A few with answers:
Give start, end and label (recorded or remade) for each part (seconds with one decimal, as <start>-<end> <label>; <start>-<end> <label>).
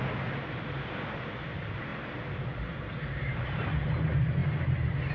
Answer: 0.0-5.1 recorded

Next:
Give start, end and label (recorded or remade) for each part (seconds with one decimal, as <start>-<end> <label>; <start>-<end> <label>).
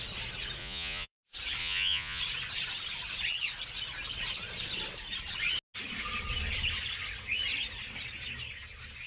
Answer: 0.0-0.6 recorded; 0.6-1.2 remade; 1.2-1.6 recorded; 1.6-2.2 remade; 2.2-9.1 recorded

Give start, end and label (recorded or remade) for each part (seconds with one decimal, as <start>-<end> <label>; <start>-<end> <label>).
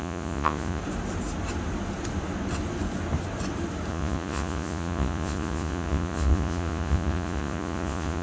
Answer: 0.0-0.8 remade; 0.8-3.9 recorded; 3.9-8.2 remade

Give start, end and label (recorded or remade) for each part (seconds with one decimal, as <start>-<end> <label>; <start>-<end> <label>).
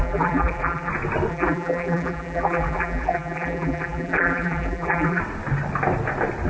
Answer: 0.0-0.9 remade; 0.9-1.3 recorded; 1.3-5.2 remade; 5.2-6.5 recorded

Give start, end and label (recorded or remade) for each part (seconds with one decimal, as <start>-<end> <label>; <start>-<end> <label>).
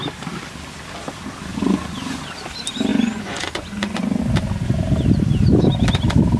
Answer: 0.0-1.5 recorded; 1.5-2.2 remade; 2.2-2.9 recorded; 2.9-4.2 remade; 4.2-6.4 recorded